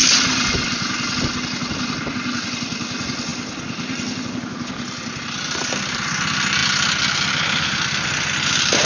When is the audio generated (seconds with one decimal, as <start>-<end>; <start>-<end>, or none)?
none